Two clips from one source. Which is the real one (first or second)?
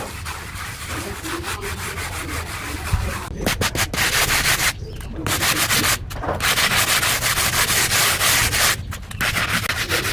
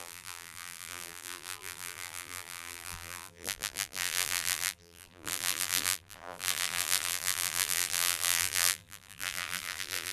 first